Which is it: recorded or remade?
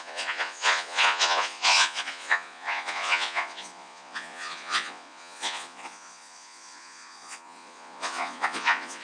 remade